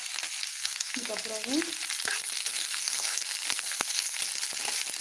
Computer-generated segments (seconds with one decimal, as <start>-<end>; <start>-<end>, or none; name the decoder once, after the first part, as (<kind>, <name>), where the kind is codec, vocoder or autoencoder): 0.5-1.1 (codec, SNAC); 2.4-4.2